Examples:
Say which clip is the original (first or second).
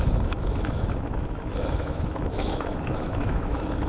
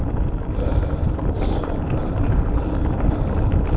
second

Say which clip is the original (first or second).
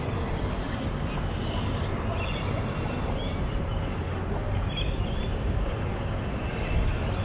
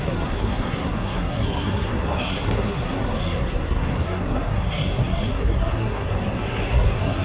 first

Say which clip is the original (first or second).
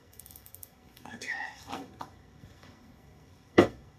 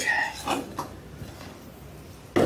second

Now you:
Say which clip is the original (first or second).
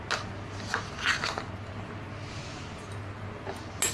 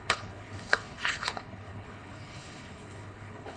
first